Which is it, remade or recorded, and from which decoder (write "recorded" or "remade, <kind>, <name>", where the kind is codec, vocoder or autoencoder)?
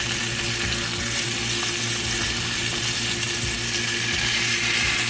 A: recorded